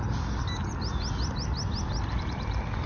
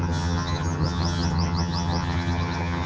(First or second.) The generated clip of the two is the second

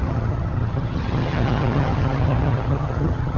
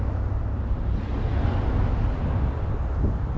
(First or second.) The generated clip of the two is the first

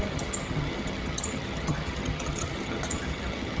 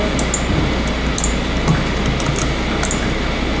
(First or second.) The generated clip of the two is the first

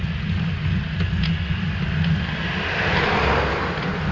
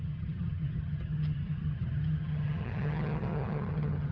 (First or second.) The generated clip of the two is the second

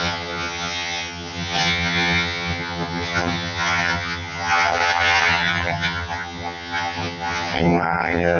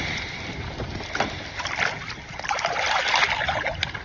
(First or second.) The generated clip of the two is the first